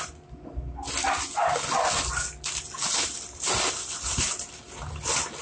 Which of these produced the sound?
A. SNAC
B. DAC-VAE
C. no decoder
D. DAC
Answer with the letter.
C